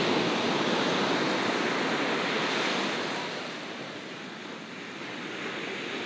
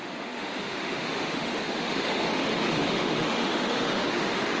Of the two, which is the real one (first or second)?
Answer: first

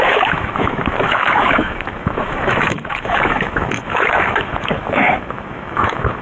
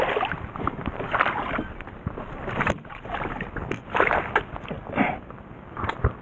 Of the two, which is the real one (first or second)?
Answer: second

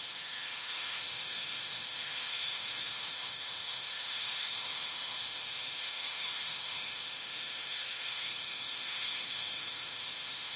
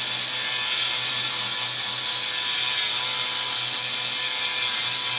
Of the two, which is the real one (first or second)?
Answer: second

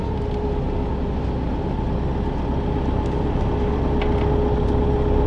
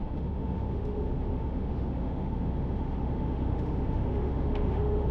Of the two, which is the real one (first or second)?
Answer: first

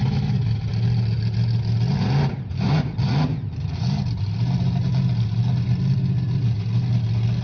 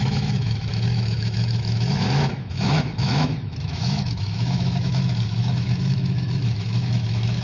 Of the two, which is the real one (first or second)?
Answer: first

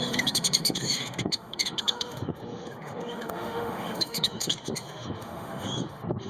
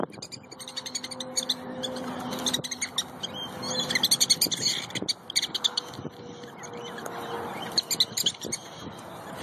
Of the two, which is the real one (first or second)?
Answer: second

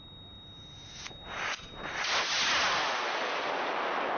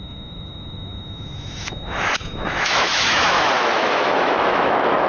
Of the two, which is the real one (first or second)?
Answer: first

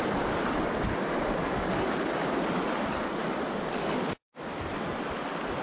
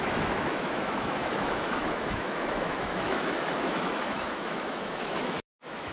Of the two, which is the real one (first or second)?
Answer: first